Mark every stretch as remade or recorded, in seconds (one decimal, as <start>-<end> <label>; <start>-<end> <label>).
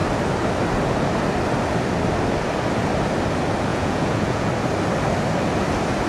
0.0-3.7 recorded; 3.7-4.5 remade; 4.5-6.1 recorded